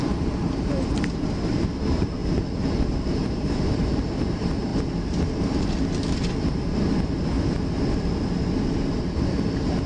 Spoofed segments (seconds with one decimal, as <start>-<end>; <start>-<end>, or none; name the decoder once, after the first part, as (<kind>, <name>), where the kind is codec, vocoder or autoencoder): 0.0-2.2 (vocoder, BigVGAN v2); 2.8-4.7; 9.0-9.9